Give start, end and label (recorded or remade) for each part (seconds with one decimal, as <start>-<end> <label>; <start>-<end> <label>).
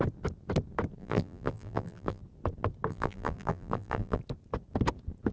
0.0-1.0 recorded; 1.0-2.2 remade; 2.2-2.9 recorded; 2.9-4.2 remade; 4.2-5.3 recorded